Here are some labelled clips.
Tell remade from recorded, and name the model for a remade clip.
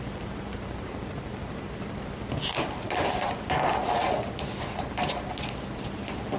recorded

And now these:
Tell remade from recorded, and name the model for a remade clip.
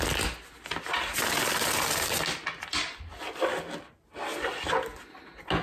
recorded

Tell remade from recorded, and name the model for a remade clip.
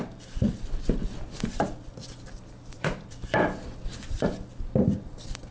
remade, vocoder, BigVGAN v2